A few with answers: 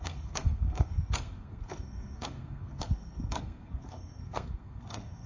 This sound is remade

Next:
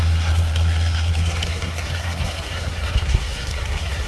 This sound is remade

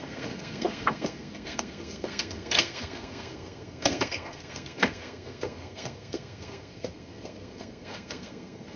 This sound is remade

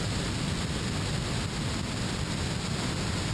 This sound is recorded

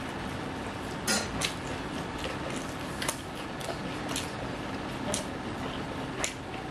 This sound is recorded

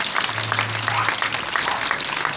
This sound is recorded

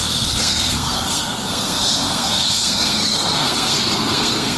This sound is remade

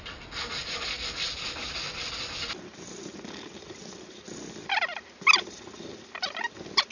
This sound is recorded